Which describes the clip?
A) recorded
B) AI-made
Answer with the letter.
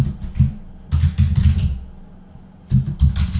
A